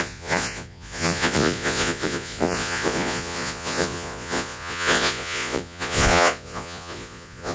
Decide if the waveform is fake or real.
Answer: fake